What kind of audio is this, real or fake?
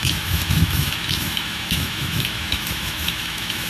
fake